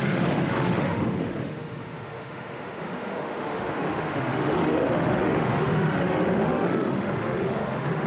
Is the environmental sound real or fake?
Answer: fake